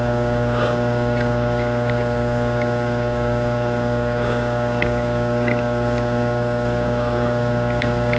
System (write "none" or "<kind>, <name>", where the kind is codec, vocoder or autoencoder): codec, DAC